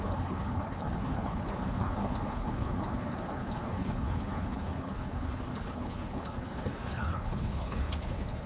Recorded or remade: remade